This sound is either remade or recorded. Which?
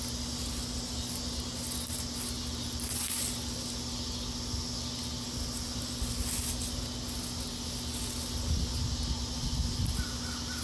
recorded